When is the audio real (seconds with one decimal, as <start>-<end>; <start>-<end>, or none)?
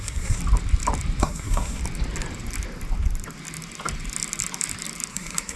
0.4-1.2; 1.8-5.1